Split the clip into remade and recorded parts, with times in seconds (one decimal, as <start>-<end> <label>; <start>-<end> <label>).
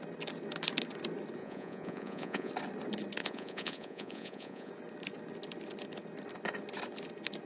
0.0-1.4 recorded; 1.4-2.5 remade; 2.5-3.2 recorded; 3.2-4.7 remade; 4.7-7.5 recorded